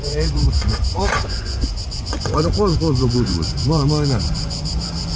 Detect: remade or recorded remade